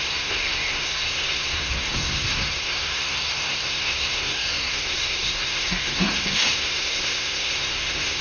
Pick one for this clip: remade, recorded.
remade